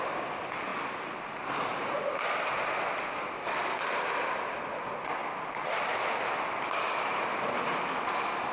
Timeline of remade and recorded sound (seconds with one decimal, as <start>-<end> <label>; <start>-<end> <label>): 0.0-8.5 recorded